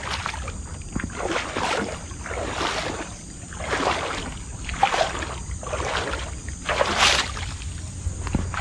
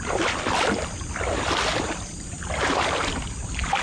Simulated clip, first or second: second